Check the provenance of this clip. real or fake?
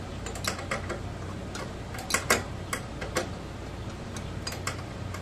real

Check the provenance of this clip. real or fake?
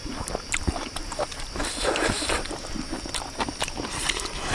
real